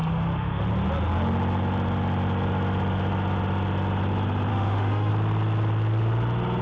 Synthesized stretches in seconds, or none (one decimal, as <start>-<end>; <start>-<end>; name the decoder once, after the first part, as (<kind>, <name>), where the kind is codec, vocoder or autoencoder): 0.0-0.6 (autoencoder, DAC-VAE); 4.5-5.1